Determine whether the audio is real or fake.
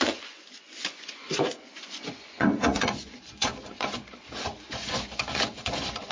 fake